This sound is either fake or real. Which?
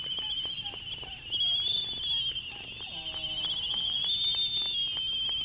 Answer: real